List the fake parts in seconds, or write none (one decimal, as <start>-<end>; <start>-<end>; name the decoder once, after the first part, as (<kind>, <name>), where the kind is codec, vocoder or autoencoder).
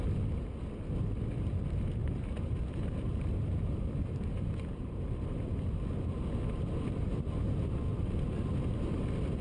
2.0-5.5 (vocoder, BigVGAN v2)